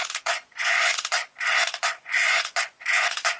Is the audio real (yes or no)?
no